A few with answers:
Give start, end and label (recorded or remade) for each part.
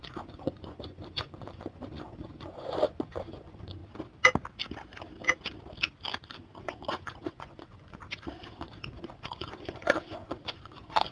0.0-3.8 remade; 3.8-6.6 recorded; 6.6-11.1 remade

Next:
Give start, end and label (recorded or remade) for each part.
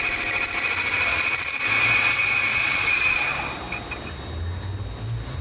0.0-1.1 recorded; 1.1-1.6 remade; 1.6-2.5 recorded; 2.5-3.2 remade; 3.2-5.4 recorded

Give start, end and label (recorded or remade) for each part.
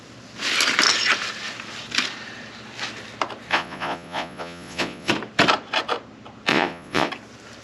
0.0-3.5 recorded; 3.5-5.1 remade; 5.1-6.5 recorded; 6.5-7.1 remade; 7.1-7.6 recorded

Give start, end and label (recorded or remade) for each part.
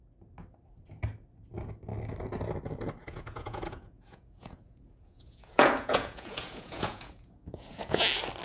0.0-3.0 recorded; 3.0-8.0 remade; 8.0-8.4 recorded